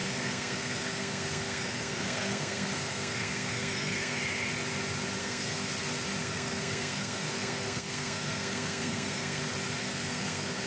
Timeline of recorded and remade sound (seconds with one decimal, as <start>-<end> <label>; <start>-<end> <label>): 0.0-4.2 remade; 4.2-5.2 recorded; 5.2-5.7 remade; 5.7-6.2 recorded; 6.2-9.4 remade; 9.4-9.8 recorded; 9.8-10.7 remade